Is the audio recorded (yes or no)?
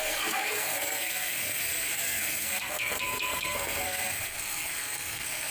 no